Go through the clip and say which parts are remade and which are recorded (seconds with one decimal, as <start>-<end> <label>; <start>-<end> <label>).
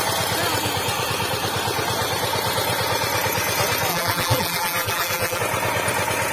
0.0-3.9 recorded; 3.9-5.4 remade; 5.4-6.3 recorded